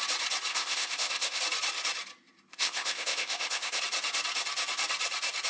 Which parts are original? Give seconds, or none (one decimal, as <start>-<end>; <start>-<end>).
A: 0.0-0.5; 1.4-2.5; 3.8-5.5